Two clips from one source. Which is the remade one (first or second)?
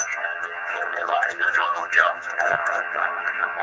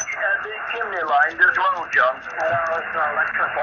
first